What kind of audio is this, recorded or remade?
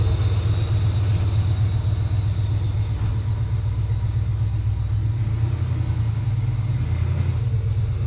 recorded